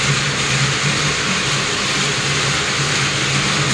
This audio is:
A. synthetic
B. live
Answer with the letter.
B